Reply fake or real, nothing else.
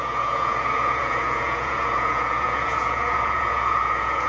fake